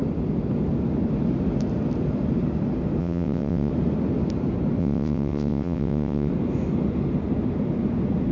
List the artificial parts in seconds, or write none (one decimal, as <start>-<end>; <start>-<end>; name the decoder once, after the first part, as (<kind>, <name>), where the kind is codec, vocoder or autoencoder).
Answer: 3.0-3.7 (vocoder, WaveNeXt); 4.8-6.3